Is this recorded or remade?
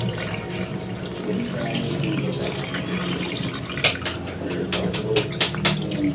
recorded